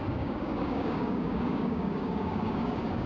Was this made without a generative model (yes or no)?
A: no